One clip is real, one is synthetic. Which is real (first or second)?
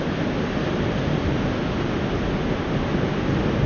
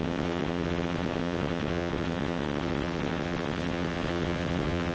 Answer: first